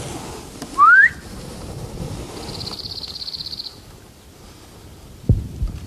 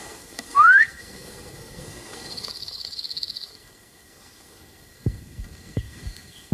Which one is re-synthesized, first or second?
second